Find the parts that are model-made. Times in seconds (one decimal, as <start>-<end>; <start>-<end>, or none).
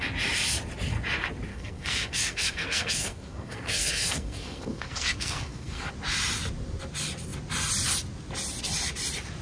1.5-5.9